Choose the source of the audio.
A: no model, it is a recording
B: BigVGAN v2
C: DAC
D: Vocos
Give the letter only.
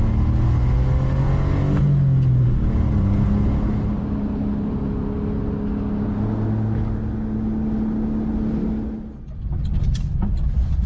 A